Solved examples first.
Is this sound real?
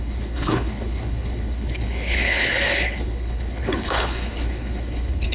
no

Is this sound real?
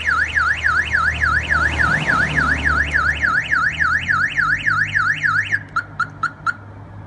yes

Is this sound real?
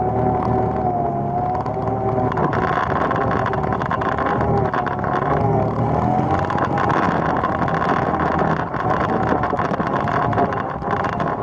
yes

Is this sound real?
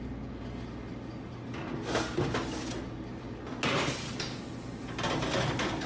yes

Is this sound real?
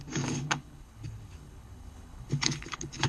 no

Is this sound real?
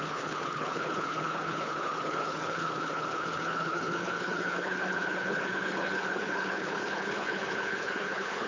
no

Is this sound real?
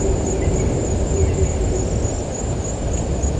yes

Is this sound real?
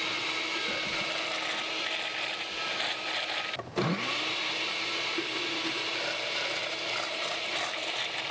yes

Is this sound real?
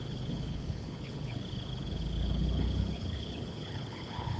no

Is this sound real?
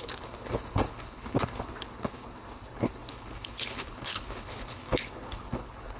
no